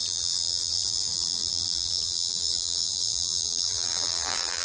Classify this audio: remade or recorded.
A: remade